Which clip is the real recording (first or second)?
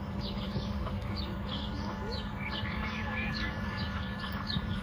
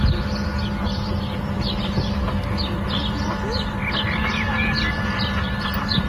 second